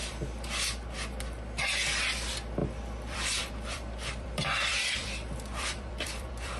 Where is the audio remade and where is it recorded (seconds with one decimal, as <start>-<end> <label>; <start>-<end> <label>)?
0.0-0.7 remade; 0.7-2.6 recorded; 2.6-6.6 remade